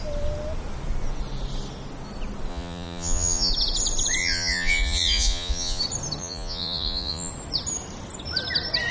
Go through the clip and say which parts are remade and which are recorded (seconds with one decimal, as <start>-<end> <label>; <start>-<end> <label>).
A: 0.0-2.5 recorded; 2.5-3.5 remade; 3.5-4.2 recorded; 4.2-5.8 remade; 5.8-6.2 recorded; 6.2-7.3 remade; 7.3-8.9 recorded